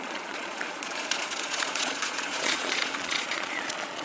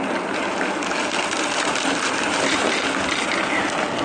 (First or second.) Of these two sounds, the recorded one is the second